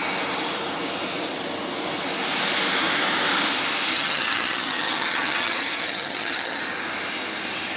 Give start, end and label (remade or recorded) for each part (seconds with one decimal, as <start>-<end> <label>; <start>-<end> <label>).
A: 0.0-3.9 recorded; 3.9-6.6 remade; 6.6-7.8 recorded